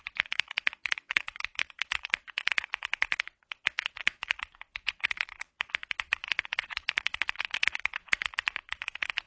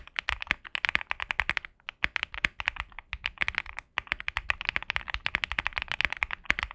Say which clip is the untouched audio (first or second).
second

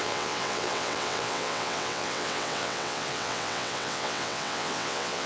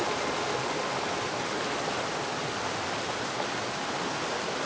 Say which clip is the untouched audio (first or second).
second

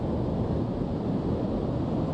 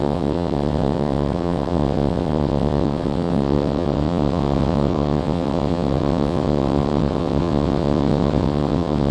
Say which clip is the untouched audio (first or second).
first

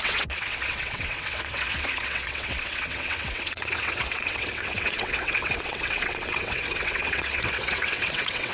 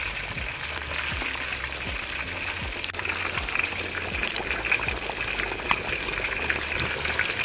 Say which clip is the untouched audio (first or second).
second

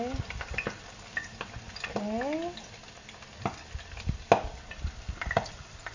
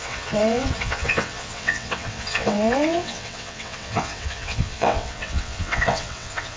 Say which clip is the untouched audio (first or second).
first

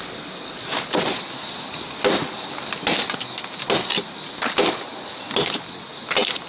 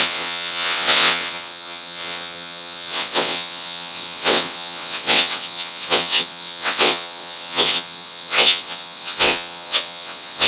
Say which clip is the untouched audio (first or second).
first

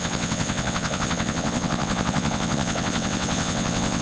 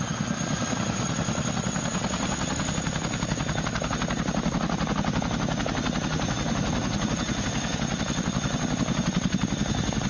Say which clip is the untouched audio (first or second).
second